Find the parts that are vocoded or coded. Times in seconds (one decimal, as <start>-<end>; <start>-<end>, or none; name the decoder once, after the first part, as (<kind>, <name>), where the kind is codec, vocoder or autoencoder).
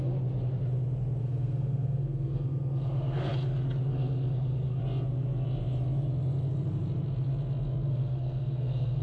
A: 1.2-3.3 (codec, SNAC); 3.9-4.8; 7.9-9.0